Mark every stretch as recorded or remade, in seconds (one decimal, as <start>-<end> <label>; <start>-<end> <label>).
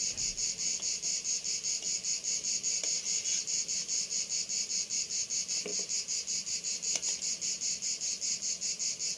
0.0-9.2 recorded